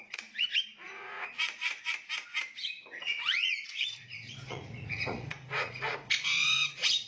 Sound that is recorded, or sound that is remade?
remade